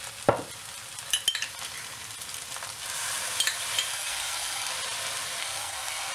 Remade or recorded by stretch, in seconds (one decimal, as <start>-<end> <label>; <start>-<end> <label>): 0.0-3.9 recorded; 3.9-4.7 remade; 4.7-5.4 recorded; 5.4-6.1 remade